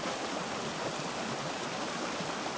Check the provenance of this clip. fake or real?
real